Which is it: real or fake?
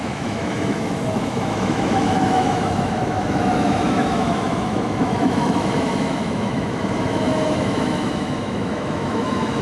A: fake